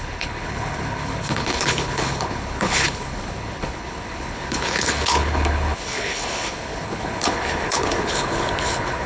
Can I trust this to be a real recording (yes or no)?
no